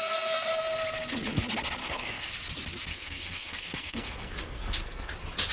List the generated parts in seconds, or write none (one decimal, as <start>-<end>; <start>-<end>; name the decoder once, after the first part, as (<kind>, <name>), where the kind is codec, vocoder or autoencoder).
1.8-2.3 (codec, SNAC); 2.9-5.1